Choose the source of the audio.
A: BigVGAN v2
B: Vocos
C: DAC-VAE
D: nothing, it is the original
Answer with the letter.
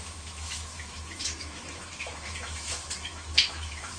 C